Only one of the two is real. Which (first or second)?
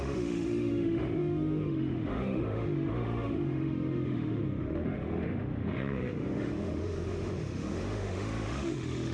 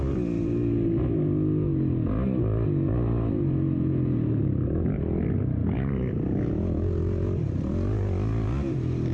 second